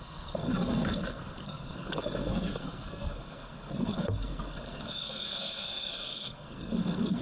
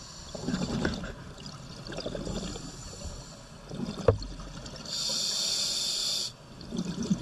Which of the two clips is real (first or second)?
second